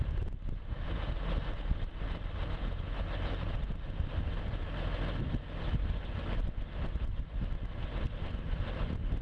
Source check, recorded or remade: recorded